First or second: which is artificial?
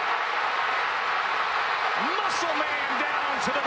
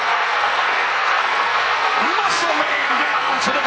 second